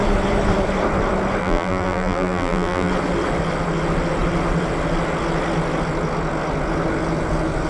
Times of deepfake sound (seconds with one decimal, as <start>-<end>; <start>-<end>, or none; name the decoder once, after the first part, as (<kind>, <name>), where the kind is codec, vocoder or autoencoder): 1.4-2.9 (vocoder, BigVGAN v2)